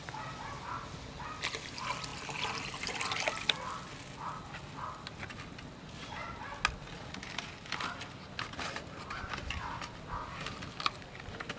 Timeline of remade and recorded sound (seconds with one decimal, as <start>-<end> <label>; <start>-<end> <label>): 0.0-11.6 recorded